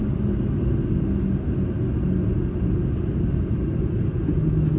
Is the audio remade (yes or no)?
no